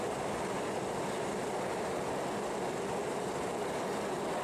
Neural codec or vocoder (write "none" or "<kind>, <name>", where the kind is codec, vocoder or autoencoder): none